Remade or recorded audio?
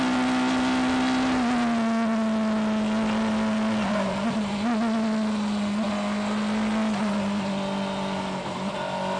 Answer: recorded